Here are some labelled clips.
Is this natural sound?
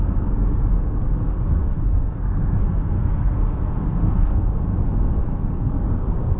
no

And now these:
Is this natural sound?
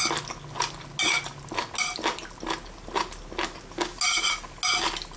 yes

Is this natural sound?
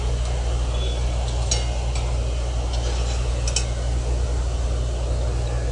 yes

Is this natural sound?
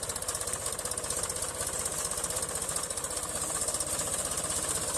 yes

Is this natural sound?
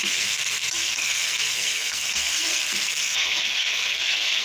no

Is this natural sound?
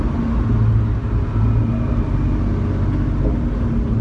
yes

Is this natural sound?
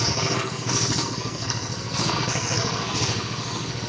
no